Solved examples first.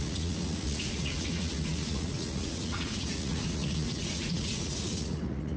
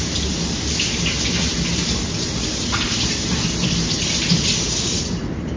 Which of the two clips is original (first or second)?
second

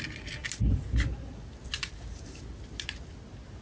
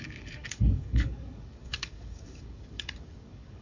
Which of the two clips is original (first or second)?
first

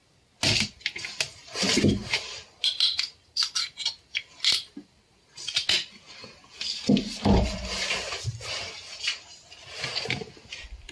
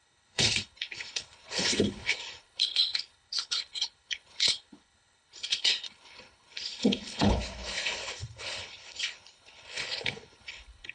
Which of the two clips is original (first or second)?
first